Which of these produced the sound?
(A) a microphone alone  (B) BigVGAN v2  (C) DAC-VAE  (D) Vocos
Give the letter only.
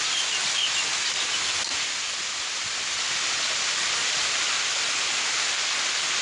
A